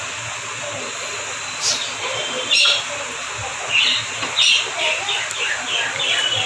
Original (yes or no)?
yes